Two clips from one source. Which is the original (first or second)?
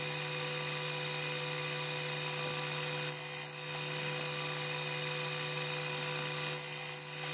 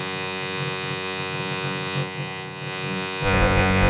first